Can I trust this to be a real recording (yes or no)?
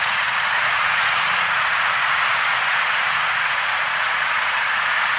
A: no